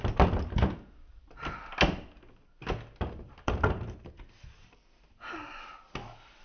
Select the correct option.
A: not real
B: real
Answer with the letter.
B